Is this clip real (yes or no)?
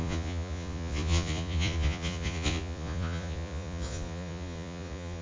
no